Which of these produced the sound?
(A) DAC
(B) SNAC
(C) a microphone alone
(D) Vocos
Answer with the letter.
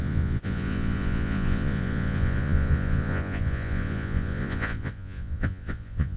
D